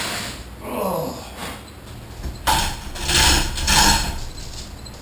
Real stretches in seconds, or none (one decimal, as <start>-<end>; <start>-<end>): 0.0-5.0